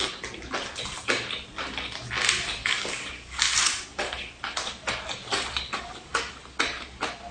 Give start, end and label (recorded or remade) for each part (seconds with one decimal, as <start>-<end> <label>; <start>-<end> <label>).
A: 0.0-2.6 recorded; 2.6-3.4 remade; 3.4-5.3 recorded; 5.3-6.4 remade; 6.4-7.3 recorded